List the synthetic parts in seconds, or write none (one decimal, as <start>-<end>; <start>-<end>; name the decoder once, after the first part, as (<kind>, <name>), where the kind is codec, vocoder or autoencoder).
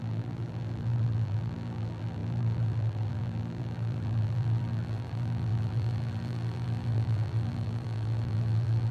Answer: 0.0-8.9 (vocoder, BigVGAN v2)